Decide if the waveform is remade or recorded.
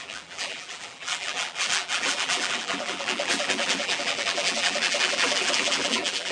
remade